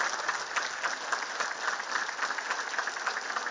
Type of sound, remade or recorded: recorded